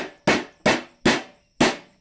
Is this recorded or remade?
recorded